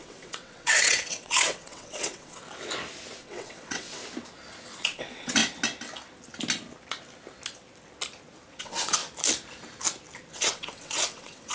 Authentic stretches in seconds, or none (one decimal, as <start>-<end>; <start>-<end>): 2.4-3.2; 4.0-4.8; 5.4-8.6; 9.0-10.3